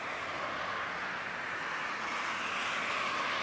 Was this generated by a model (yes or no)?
no